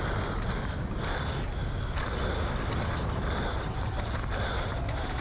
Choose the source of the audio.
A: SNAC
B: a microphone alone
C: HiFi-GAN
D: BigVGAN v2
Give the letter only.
B